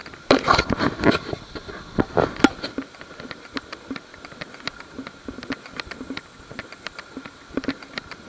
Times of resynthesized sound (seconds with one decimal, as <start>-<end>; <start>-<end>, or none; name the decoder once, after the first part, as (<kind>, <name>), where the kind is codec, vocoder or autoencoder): none

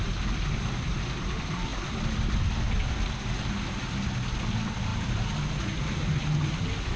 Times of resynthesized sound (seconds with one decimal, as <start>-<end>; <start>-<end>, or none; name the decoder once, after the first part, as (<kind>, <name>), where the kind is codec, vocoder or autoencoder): none

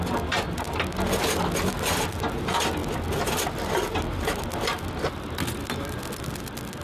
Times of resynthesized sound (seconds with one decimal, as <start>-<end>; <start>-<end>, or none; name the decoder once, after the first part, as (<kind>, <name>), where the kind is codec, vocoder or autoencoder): none

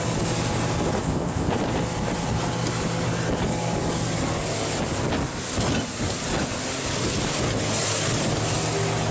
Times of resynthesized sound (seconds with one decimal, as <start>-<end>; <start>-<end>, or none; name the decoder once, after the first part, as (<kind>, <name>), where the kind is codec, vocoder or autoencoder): 1.0-1.5 (codec, ZipCodec)

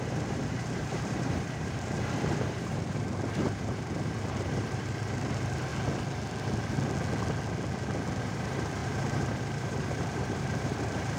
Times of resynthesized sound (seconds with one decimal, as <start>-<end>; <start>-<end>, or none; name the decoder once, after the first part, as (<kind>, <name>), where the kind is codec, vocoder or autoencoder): 0.0-5.7 (vocoder, BigVGAN v2); 8.2-11.2

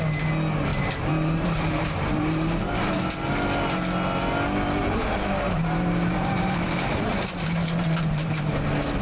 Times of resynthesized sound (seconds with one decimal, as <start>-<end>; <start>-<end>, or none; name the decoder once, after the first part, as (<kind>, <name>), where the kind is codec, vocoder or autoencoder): 0.7-3.0 (vocoder, BigVGAN v2); 4.8-8.5

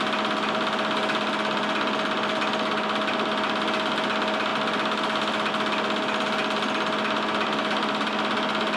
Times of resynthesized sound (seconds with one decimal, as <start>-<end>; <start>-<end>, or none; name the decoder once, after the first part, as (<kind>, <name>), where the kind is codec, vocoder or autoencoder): none